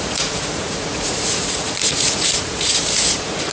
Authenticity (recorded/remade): remade